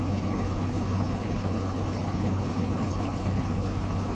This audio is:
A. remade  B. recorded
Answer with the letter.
A